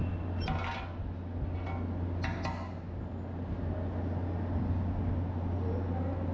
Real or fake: real